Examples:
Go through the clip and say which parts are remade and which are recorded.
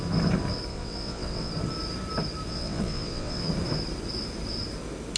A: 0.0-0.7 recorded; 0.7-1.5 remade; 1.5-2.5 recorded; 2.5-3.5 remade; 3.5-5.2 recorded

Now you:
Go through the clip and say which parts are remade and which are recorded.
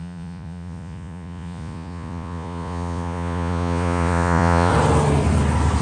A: 0.0-4.7 remade; 4.7-5.8 recorded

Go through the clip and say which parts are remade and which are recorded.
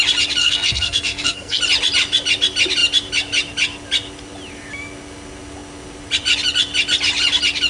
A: 0.0-0.4 recorded; 0.4-1.6 remade; 1.6-7.7 recorded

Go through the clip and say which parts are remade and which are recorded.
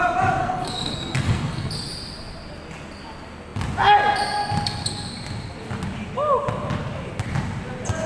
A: 0.0-0.4 recorded; 0.4-1.7 remade; 1.7-8.1 recorded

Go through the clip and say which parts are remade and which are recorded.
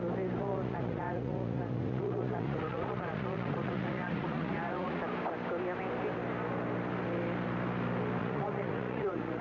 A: 0.0-0.4 recorded; 0.4-5.0 remade; 5.0-8.2 recorded; 8.2-9.4 remade